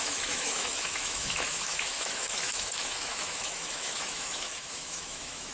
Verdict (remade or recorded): remade